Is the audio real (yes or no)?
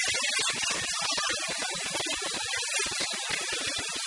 yes